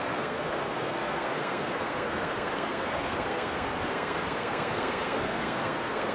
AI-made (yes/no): yes